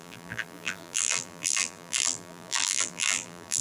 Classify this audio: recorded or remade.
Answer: remade